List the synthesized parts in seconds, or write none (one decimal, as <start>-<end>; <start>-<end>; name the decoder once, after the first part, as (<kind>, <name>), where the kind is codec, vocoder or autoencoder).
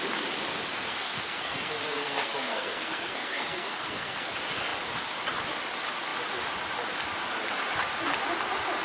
0.7-4.3 (codec, SNAC)